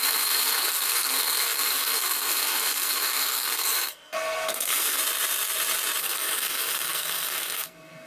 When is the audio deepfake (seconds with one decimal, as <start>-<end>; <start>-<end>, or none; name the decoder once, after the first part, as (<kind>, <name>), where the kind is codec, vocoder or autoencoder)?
0.0-5.0 (codec, SNAC); 6.0-8.1